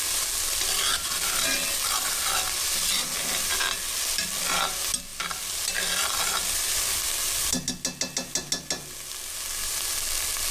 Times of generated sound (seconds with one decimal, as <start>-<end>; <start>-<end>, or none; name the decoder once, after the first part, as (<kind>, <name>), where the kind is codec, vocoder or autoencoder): none